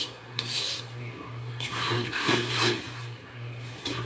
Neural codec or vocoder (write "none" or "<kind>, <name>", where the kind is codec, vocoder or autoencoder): codec, SNAC